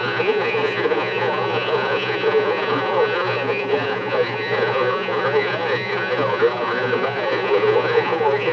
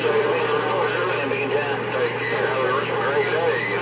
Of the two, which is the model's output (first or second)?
first